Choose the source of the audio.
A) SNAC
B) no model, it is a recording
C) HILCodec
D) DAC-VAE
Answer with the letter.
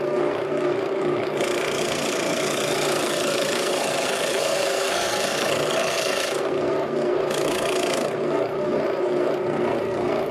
A